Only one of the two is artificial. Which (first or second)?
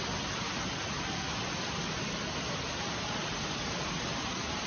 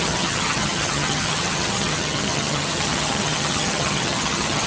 second